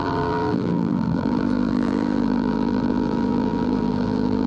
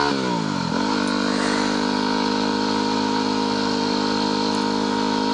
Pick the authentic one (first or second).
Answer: second